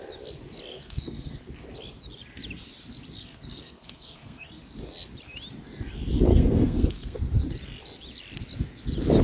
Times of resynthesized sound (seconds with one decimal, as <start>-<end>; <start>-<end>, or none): 0.7-1.5; 3.2-4.6; 6.3-7.2